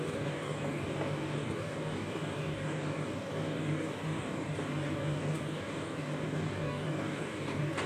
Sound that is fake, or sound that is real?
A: fake